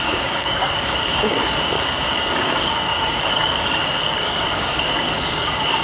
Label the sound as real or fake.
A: fake